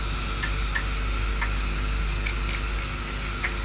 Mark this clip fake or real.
real